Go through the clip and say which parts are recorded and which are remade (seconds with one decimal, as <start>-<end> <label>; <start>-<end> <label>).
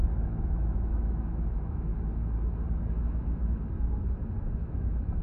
0.0-1.9 remade; 1.9-3.0 recorded; 3.0-3.4 remade; 3.4-4.5 recorded; 4.5-5.2 remade